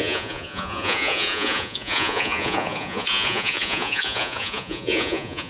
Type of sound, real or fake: fake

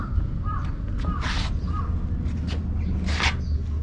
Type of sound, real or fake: real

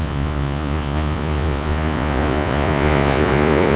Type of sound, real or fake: fake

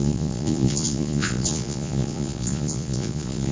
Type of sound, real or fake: fake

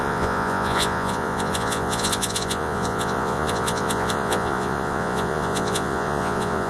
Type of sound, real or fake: fake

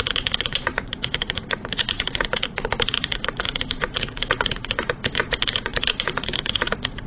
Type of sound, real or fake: fake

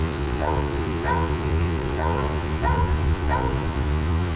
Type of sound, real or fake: fake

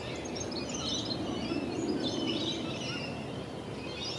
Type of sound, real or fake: real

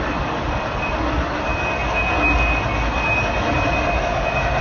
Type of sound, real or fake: real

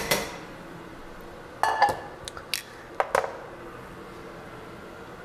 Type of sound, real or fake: real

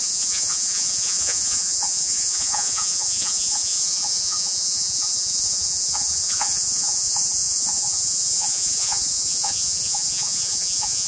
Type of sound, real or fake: fake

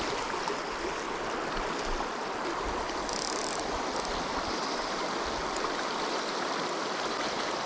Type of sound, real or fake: real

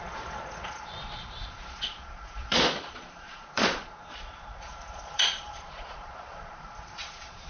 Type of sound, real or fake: fake